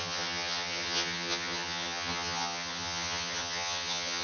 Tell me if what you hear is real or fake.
fake